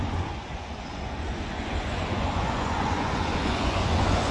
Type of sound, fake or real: fake